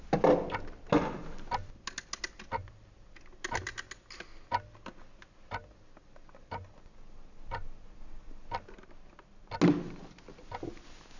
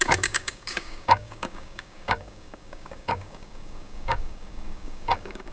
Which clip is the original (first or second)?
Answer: first